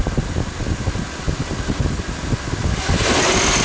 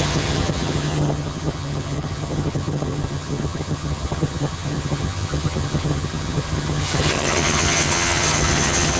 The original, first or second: first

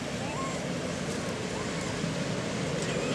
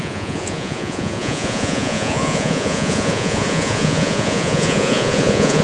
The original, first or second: first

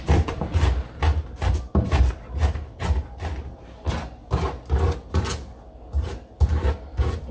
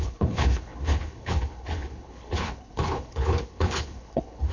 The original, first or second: first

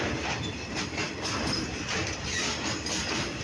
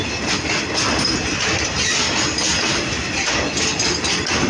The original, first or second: second